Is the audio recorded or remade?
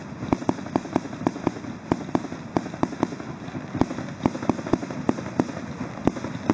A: recorded